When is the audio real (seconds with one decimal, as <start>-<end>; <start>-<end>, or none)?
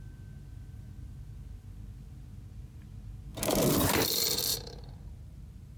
0.0-4.5